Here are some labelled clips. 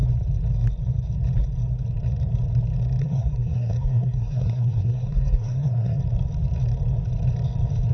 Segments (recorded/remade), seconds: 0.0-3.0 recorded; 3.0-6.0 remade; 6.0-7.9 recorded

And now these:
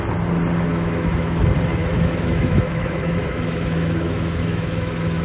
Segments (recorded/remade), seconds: 0.0-0.7 recorded; 0.7-1.4 remade; 1.4-1.8 recorded; 1.8-5.2 remade

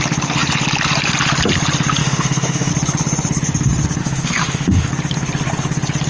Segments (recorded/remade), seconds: 0.0-2.0 recorded; 2.0-2.7 remade; 2.7-4.0 recorded; 4.0-4.9 remade; 4.9-6.1 recorded

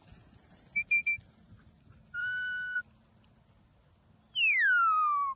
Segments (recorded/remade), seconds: 0.0-2.2 recorded; 2.2-2.8 remade; 2.8-5.4 recorded

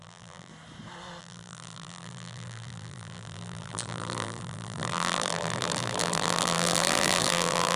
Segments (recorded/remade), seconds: 0.0-0.5 remade; 0.5-1.2 recorded; 1.2-7.8 remade

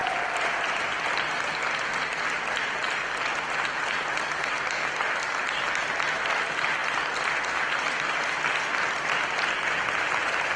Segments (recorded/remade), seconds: 0.0-10.6 recorded